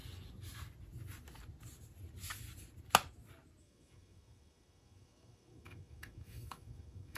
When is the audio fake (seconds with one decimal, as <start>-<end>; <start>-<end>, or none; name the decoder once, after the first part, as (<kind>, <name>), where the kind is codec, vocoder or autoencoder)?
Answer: 3.6-7.2 (autoencoder, DAC-VAE)